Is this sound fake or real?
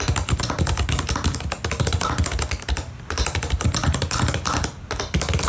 real